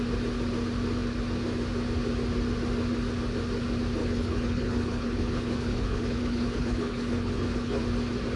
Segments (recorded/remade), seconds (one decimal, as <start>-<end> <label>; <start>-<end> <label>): 0.0-4.0 recorded; 4.0-7.8 remade; 7.8-8.4 recorded